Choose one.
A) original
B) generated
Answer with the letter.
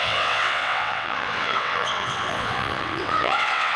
B